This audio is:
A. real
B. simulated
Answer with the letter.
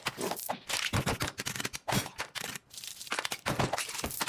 A